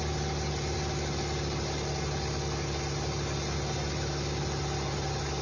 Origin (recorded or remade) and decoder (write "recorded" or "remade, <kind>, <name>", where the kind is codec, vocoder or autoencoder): recorded